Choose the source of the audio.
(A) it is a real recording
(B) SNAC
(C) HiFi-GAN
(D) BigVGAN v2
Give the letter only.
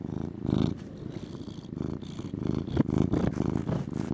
A